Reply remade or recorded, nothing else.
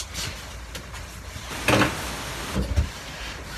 recorded